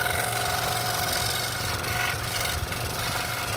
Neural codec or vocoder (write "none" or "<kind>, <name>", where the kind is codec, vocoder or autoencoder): none